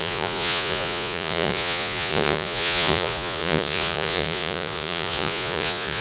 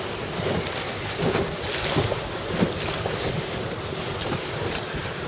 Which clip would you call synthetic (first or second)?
first